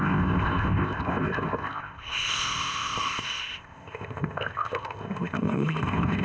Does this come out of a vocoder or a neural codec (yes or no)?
yes